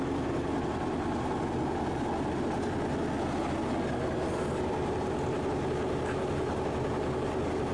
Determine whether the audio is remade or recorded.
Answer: recorded